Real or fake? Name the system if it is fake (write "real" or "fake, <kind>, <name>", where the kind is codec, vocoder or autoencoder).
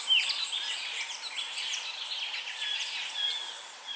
real